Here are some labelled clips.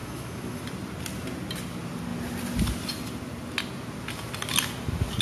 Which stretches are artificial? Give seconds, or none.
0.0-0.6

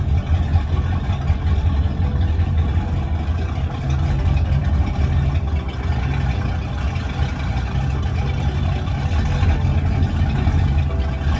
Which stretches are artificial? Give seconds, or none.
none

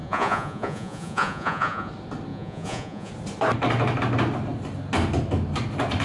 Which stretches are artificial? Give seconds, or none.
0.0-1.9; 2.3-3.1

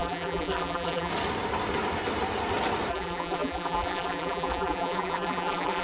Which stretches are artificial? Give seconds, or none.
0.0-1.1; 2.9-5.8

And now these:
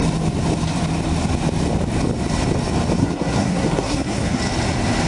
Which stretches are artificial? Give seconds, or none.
3.0-4.4